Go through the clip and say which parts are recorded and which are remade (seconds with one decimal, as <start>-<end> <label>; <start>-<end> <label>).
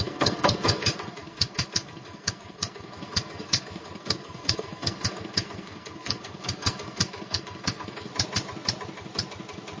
0.0-8.1 remade; 8.1-9.8 recorded